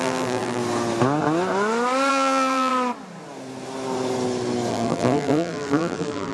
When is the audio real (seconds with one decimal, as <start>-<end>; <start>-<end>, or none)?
0.6-2.1; 2.7-4.7